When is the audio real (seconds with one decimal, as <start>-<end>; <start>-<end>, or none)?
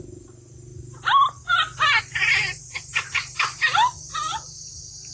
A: 0.0-5.1